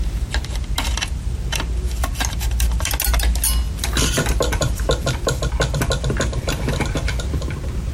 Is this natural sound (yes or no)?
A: yes